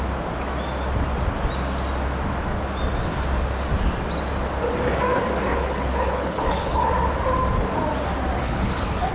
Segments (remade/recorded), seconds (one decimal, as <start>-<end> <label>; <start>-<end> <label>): 0.0-5.5 recorded; 5.5-6.9 remade; 6.9-8.4 recorded; 8.4-9.1 remade